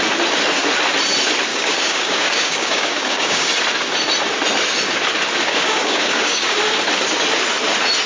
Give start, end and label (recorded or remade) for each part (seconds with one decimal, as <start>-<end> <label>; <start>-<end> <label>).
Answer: 0.0-1.5 recorded; 1.5-3.5 remade; 3.5-5.5 recorded; 5.5-6.6 remade; 6.6-8.1 recorded

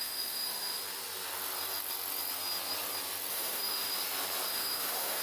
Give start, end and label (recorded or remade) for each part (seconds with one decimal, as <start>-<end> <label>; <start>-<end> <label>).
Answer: 0.0-0.8 remade; 0.8-3.3 recorded; 3.3-3.9 remade; 3.9-4.5 recorded; 4.5-5.2 remade

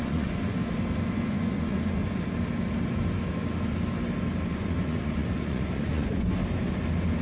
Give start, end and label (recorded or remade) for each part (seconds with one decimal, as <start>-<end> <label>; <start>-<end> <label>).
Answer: 0.0-0.6 remade; 0.6-1.2 recorded; 1.2-2.0 remade; 2.0-4.5 recorded; 4.5-6.4 remade; 6.4-7.2 recorded

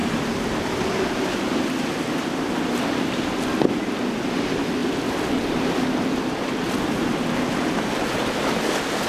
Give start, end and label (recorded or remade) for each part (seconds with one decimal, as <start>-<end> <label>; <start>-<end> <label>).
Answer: 0.0-4.8 recorded; 4.8-5.6 remade; 5.6-9.1 recorded

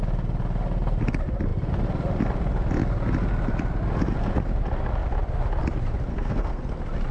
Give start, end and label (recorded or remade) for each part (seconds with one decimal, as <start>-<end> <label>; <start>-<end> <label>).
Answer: 0.0-6.1 recorded; 6.1-6.6 remade; 6.6-7.1 recorded

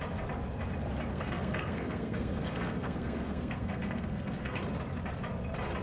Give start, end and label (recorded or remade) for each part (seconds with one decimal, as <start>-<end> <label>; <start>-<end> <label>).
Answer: 0.0-1.1 recorded; 1.1-4.6 remade; 4.6-5.8 recorded